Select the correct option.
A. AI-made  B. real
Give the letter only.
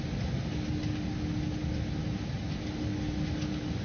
B